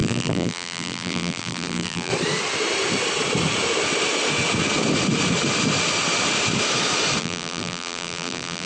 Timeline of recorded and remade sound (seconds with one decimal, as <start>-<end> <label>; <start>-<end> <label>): 0.0-2.1 remade; 2.1-7.2 recorded; 7.2-8.7 remade

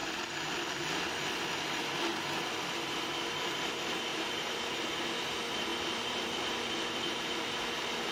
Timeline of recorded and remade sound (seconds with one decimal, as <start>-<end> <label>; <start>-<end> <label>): 0.0-4.1 recorded; 4.1-4.7 remade; 4.7-5.7 recorded; 5.7-8.1 remade

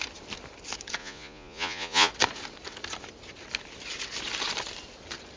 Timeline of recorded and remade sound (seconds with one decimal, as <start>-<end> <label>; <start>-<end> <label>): 0.0-1.0 recorded; 1.0-2.1 remade; 2.1-5.4 recorded

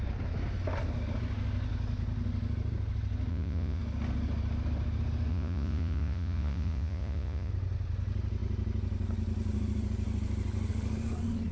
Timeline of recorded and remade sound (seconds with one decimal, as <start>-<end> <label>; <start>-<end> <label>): 0.0-3.3 recorded; 3.3-3.8 remade; 3.8-5.3 recorded; 5.3-7.5 remade; 7.5-11.5 recorded

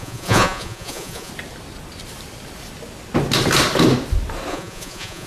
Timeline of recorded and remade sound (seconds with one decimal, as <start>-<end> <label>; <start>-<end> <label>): 0.0-1.3 remade; 1.3-4.5 recorded; 4.5-5.3 remade

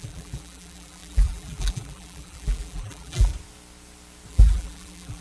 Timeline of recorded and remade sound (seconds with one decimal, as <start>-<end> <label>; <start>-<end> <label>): 0.0-3.3 remade; 3.3-4.3 recorded; 4.3-5.2 remade